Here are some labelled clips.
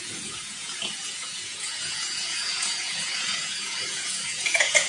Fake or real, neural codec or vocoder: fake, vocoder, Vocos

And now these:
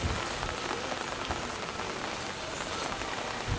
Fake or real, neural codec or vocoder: real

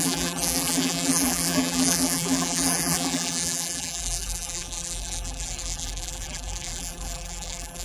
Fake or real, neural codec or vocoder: fake, vocoder, BigVGAN v2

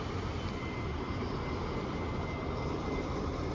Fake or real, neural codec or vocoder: real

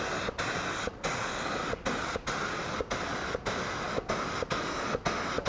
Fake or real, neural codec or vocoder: real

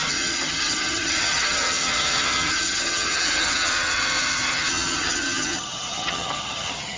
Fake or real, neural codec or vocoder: fake, vocoder, HiFi-GAN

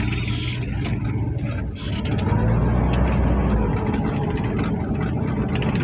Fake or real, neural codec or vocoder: real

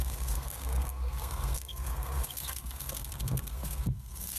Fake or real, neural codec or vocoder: fake, codec, SNAC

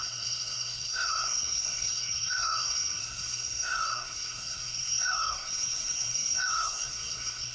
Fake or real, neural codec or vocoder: fake, codec, SNAC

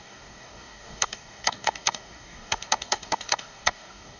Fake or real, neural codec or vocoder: fake, codec, DAC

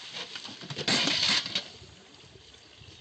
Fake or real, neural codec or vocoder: real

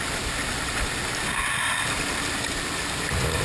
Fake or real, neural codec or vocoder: real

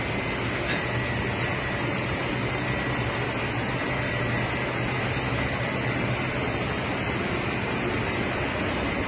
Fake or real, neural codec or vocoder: real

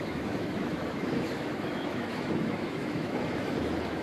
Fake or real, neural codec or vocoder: fake, autoencoder, DAC-VAE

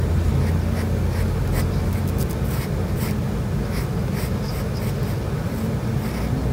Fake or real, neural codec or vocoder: real